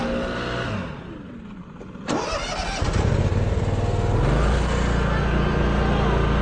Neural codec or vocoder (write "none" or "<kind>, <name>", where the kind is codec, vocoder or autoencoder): none